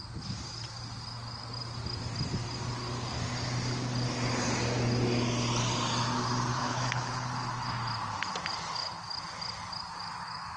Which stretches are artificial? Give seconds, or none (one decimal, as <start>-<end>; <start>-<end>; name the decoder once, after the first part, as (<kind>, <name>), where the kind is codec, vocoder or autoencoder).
6.5-7.3 (codec, HILCodec)